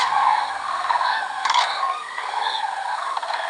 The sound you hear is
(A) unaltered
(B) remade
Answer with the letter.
B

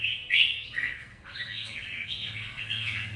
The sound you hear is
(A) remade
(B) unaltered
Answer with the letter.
A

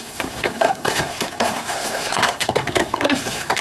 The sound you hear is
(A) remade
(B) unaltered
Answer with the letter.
A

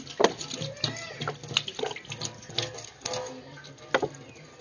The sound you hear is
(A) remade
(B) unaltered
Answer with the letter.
B